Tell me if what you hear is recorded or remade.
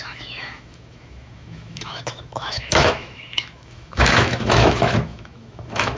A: remade